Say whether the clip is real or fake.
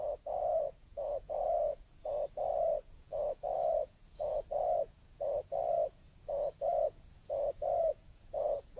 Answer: fake